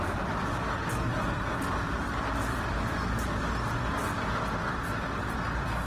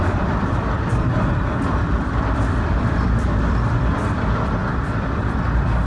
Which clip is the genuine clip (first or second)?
first